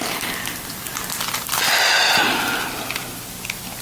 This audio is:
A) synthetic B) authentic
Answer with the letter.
B